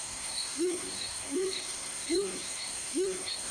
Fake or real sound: fake